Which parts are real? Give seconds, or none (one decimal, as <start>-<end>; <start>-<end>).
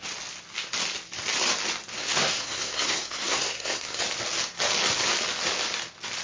0.0-2.0; 4.0-6.2